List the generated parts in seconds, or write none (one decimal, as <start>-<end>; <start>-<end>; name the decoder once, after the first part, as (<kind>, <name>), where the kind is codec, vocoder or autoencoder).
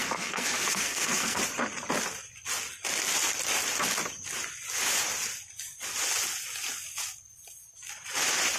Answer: 0.0-1.4 (codec, SNAC)